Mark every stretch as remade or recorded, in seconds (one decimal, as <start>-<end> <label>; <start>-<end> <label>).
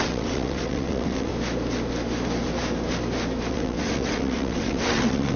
0.0-1.3 remade; 1.3-3.5 recorded; 3.5-5.4 remade